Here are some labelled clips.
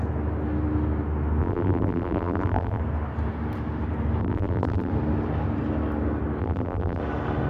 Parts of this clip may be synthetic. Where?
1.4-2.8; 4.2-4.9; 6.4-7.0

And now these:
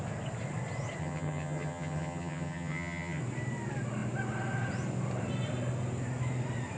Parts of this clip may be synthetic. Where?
1.0-3.2

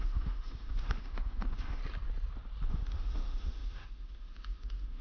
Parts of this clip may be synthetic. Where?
0.0-1.8; 2.7-5.0